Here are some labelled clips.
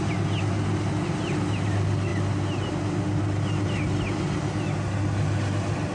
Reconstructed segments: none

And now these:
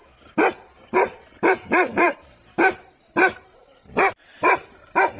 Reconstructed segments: 0.0-3.1 (vocoder, BigVGAN v2); 3.6-4.4

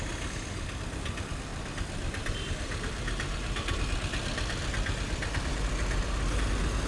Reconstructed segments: none

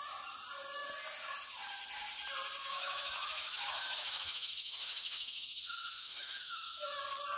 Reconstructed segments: 2.6-7.0 (autoencoder, DAC-VAE)

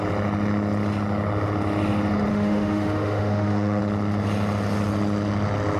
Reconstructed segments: 2.3-3.8 (autoencoder, DAC-VAE)